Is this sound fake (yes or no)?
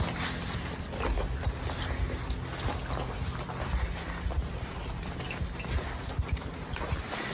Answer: no